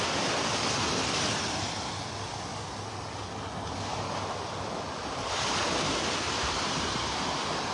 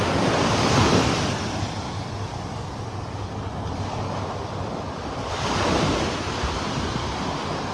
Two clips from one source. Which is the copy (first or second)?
second